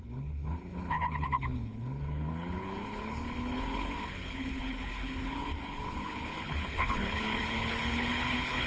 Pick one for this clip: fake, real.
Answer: fake